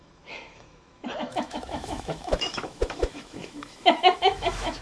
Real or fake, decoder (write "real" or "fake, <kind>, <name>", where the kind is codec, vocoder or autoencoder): fake, autoencoder, DAC-VAE